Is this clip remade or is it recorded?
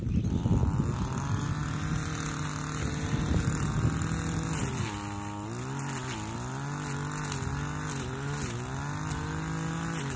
recorded